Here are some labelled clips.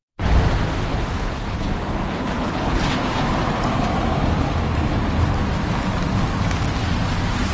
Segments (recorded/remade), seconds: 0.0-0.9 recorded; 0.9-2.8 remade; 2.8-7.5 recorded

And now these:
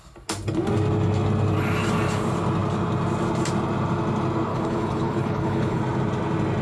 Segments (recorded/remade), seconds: 0.0-4.5 recorded; 4.5-5.8 remade; 5.8-6.6 recorded